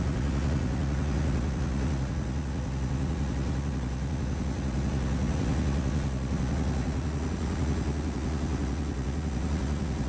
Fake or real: fake